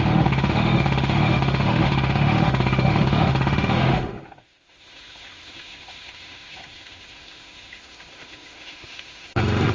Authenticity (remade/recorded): remade